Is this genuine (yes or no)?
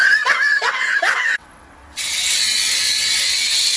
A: no